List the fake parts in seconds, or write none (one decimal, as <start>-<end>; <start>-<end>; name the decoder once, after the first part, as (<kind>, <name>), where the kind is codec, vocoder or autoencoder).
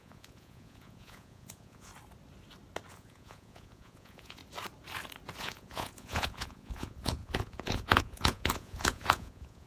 0.0-1.9 (vocoder, Vocos); 2.9-4.4; 5.4-9.7